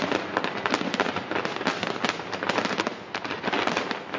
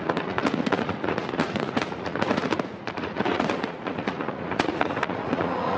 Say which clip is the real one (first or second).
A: first